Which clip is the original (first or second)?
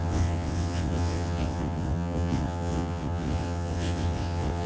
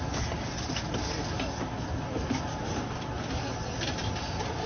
second